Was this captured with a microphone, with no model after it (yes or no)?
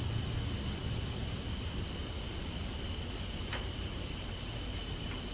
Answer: yes